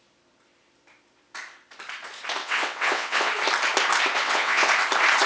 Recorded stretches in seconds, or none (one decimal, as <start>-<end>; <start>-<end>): 0.0-2.4; 3.3-4.2; 4.7-5.3